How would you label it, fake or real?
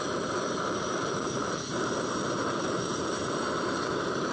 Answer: fake